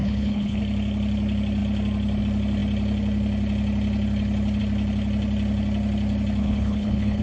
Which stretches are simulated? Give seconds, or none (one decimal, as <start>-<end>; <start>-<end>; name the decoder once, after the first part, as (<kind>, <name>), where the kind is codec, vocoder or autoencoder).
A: 0.0-0.6 (codec, HILCodec); 6.4-7.2